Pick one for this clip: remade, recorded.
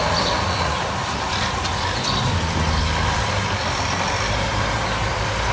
remade